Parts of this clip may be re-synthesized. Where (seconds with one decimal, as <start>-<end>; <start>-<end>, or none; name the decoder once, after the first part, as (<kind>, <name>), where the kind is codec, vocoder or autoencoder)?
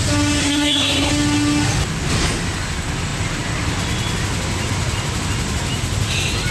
0.4-1.1 (codec, SNAC)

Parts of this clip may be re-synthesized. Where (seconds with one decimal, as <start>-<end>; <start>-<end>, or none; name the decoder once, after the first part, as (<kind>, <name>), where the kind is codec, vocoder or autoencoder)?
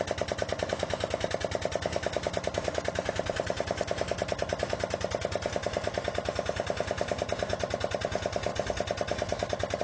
none